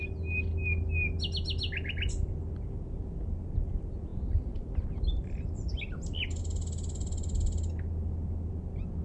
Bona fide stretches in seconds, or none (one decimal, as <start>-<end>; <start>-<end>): 0.0-9.0